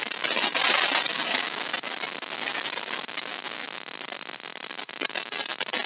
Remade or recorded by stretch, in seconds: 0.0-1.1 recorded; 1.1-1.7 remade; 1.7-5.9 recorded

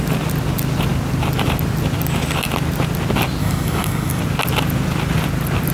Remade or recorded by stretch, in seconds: 0.0-3.4 recorded; 3.4-4.2 remade; 4.2-5.7 recorded

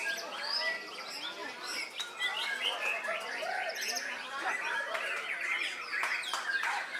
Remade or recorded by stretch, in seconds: 0.0-7.0 recorded